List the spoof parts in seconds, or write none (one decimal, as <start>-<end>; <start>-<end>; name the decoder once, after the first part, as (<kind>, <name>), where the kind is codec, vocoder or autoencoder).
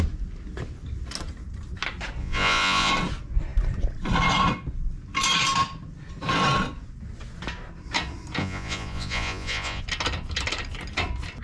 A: 2.2-2.9 (vocoder, Vocos); 8.4-9.8